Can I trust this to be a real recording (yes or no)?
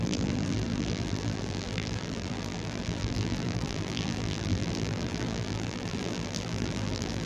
no